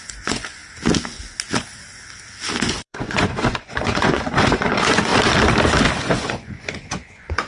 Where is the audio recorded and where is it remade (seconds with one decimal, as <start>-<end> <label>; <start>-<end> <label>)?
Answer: 0.0-0.6 remade; 0.6-2.6 recorded; 2.6-5.1 remade; 5.1-6.0 recorded; 6.0-7.5 remade